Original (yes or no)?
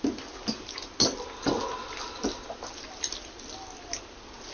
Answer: yes